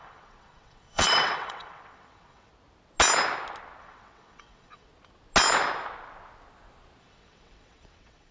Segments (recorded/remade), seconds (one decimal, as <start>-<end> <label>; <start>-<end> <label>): 0.0-2.5 remade; 2.5-3.8 recorded; 3.8-4.9 remade; 4.9-7.0 recorded; 7.0-8.3 remade